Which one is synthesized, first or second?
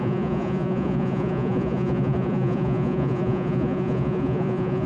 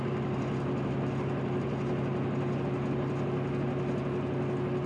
first